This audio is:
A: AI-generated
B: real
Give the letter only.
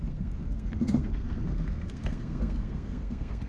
A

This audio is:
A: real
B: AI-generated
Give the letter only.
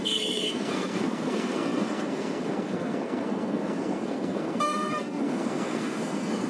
B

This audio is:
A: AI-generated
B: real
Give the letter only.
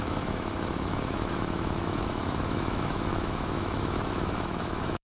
A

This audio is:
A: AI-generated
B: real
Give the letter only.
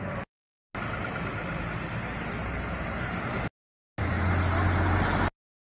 B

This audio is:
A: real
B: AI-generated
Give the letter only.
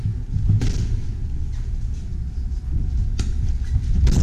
A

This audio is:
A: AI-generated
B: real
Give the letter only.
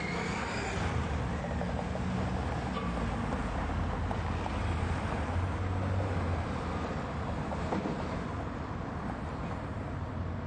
B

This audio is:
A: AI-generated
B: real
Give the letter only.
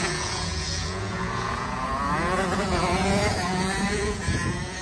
A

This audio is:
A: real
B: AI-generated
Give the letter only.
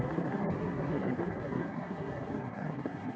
B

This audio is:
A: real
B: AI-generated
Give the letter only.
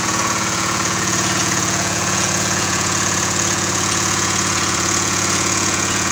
B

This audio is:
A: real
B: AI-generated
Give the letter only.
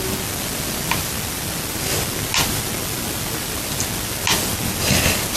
A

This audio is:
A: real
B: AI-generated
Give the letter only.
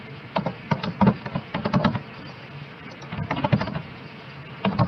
A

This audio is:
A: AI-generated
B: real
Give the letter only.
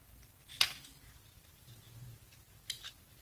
B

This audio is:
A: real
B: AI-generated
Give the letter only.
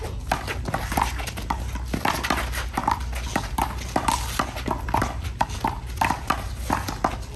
A